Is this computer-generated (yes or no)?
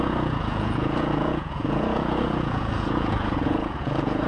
yes